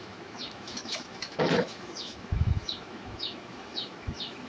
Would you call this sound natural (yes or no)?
no